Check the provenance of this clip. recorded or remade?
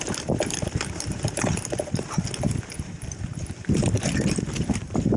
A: remade